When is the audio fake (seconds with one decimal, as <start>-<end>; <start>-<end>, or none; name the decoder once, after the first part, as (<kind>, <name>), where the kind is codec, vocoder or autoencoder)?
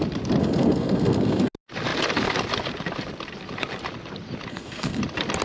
0.4-1.5 (codec, SNAC); 4.5-5.0